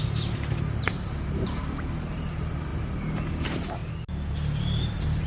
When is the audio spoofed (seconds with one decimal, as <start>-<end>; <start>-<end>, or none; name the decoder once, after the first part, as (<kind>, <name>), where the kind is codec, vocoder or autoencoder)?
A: 0.0-2.7 (vocoder, BigVGAN v2); 3.3-3.8; 4.6-5.3